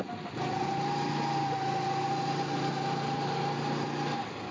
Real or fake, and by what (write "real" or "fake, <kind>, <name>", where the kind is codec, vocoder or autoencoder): real